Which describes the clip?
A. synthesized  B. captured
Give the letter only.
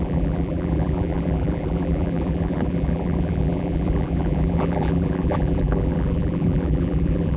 A